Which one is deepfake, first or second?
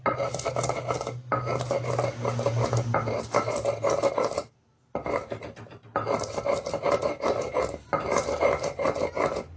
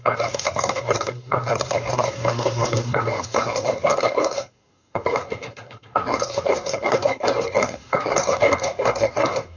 second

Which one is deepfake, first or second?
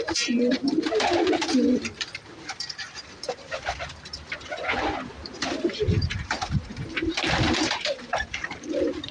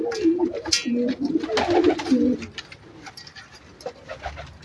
first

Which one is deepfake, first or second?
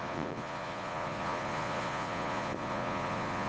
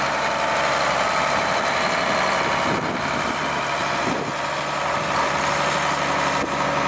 first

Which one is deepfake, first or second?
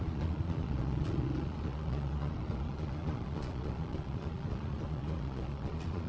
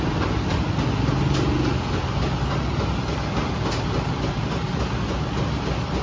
first